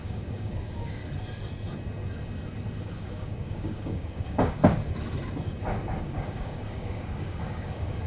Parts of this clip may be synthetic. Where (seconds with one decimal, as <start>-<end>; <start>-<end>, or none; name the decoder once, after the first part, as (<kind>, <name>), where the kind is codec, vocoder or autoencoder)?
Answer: 0.0-1.0 (codec, DAC); 2.8-4.6; 6.0-8.1